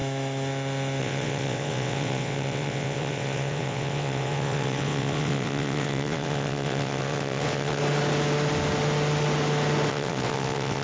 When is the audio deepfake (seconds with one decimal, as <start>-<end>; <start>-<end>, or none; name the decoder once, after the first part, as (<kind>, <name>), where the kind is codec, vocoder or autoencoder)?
1.0-7.8 (vocoder, WaveNeXt); 9.9-10.8